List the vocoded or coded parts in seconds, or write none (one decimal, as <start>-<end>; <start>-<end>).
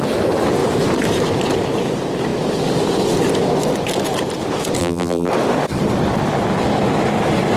4.8-5.3